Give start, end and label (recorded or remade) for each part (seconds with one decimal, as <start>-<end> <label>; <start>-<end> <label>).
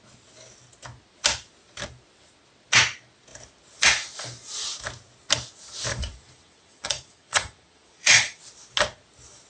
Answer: 0.0-5.9 recorded; 5.9-8.4 remade; 8.4-9.5 recorded